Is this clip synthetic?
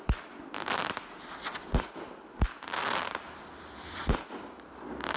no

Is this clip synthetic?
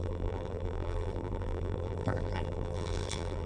yes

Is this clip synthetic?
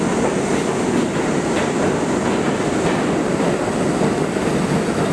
no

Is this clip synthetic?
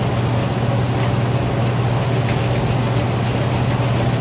no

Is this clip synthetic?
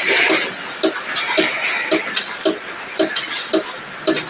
no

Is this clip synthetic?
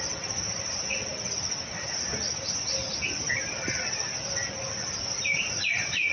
no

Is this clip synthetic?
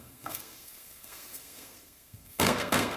yes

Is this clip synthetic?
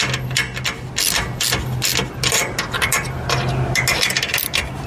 no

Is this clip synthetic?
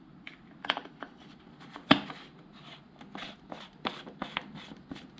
no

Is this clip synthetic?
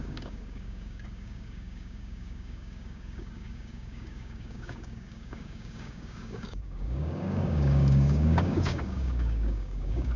yes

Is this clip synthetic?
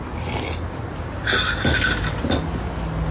no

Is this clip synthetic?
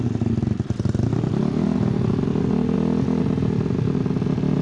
no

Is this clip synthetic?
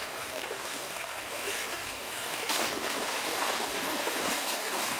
yes